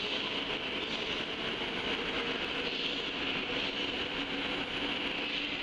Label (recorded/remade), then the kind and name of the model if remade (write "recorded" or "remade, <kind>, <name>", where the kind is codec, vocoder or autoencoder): recorded